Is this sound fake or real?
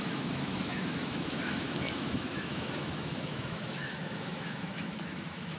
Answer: fake